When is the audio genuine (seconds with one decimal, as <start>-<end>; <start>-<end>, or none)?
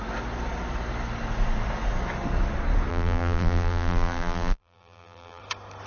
0.0-2.9; 5.4-5.9